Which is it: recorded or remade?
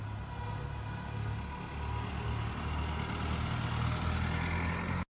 recorded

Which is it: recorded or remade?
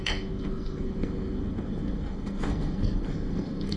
remade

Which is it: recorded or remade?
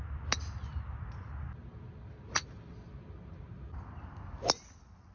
recorded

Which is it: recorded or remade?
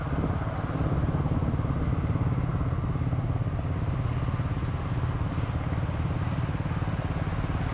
recorded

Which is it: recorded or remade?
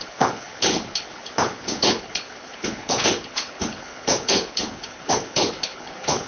remade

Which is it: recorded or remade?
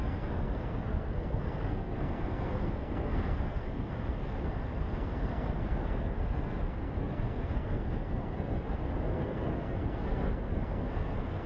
remade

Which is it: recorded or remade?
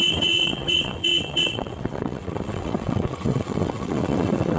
remade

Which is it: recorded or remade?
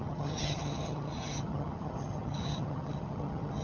remade